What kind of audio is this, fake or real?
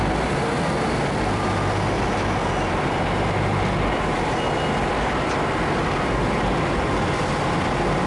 real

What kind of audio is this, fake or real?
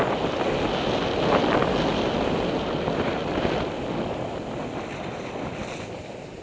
real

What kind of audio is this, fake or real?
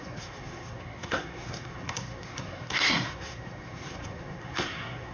fake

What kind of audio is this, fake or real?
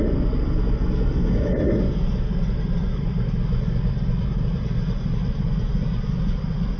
fake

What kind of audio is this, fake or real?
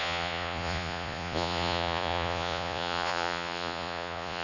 fake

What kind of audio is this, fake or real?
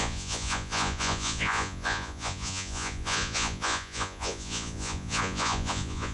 fake